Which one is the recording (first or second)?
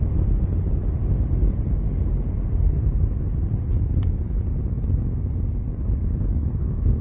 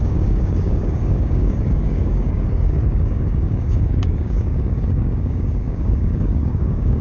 first